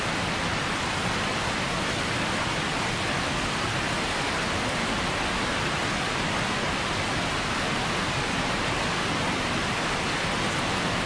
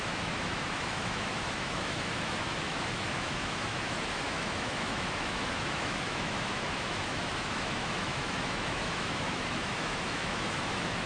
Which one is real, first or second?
first